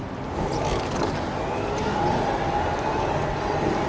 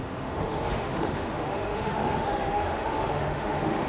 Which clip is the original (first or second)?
first